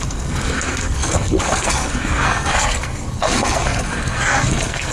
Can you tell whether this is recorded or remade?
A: remade